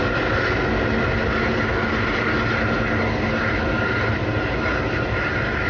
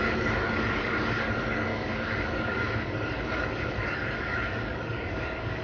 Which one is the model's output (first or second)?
second